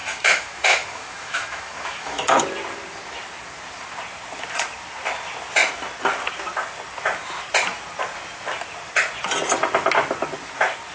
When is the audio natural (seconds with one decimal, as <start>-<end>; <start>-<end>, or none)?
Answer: 2.4-10.9